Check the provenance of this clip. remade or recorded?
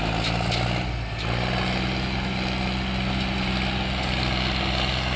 recorded